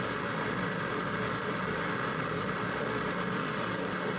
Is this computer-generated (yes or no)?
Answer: yes